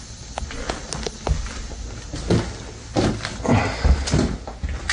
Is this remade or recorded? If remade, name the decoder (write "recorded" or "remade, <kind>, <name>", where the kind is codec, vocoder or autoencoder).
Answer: recorded